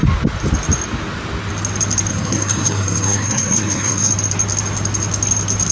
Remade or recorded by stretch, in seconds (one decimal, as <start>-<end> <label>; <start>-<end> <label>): 0.0-2.1 recorded; 2.1-4.1 remade; 4.1-5.7 recorded